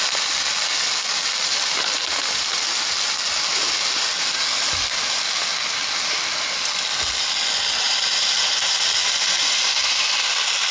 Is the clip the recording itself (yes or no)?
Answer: yes